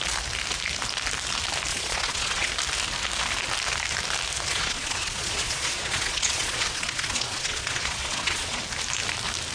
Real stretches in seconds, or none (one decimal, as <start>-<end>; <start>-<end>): 0.0-1.7; 2.5-4.5; 8.6-9.5